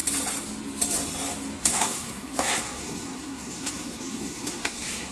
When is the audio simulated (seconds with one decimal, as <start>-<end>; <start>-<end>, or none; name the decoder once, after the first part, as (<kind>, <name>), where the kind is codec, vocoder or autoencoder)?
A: 1.6-5.1 (codec, SNAC)